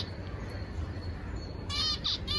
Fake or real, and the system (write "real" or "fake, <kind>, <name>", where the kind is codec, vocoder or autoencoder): fake, vocoder, BigVGAN v2